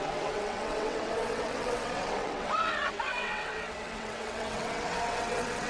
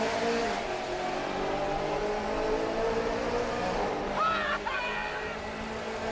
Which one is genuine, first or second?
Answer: second